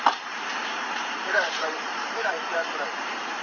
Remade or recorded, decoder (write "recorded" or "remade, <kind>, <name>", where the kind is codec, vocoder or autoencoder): remade, vocoder, BigVGAN v2